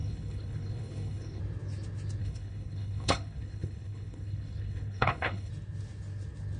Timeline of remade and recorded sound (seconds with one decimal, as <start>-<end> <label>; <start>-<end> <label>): 0.0-1.4 remade; 1.4-2.2 recorded; 2.2-5.5 remade; 5.5-6.6 recorded